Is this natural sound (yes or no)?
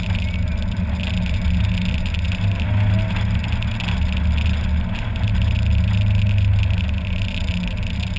yes